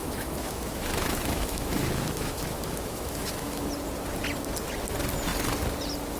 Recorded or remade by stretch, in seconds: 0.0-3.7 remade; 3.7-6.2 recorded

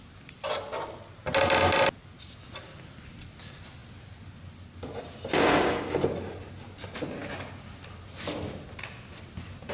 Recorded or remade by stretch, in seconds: 0.0-9.7 recorded